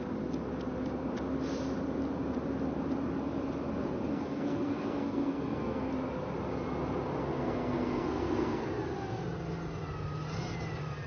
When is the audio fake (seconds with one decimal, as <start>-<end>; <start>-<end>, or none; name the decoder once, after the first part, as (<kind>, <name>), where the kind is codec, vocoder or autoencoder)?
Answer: 4.1-5.9 (codec, SNAC); 7.2-8.7